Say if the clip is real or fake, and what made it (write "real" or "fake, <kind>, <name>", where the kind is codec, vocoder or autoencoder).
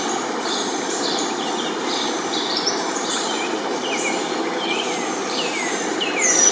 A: fake, vocoder, BigVGAN v2